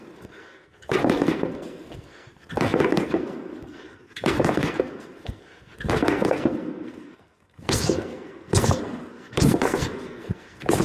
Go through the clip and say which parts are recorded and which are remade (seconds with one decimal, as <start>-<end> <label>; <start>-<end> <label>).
0.0-10.8 remade